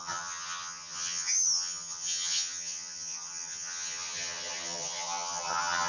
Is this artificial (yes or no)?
yes